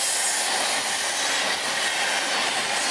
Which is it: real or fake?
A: real